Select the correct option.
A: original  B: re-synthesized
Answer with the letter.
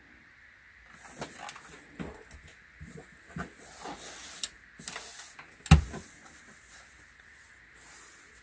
A